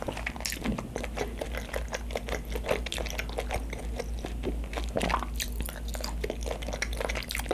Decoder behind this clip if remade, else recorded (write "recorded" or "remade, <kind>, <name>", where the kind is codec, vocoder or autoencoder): recorded